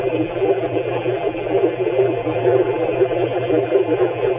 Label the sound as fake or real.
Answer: fake